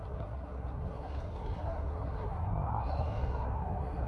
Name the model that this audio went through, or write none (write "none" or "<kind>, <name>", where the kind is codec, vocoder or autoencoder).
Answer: codec, SNAC